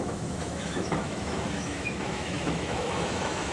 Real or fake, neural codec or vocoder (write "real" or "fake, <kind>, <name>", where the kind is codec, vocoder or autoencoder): fake, autoencoder, DAC-VAE